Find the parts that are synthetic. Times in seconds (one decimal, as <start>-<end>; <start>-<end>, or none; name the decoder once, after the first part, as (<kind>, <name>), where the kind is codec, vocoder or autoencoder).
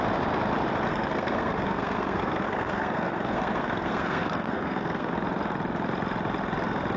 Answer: 0.9-5.1 (codec, SNAC)